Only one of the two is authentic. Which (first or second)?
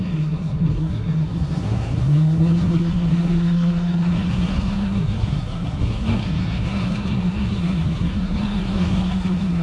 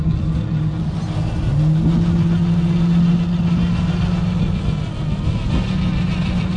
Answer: second